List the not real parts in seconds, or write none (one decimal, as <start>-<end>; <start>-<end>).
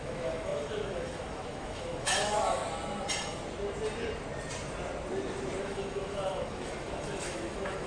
0.0-2.6; 5.6-7.9